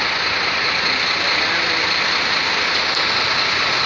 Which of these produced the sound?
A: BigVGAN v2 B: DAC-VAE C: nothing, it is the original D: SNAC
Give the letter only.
C